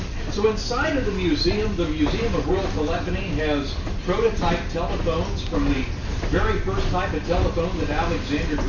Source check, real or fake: real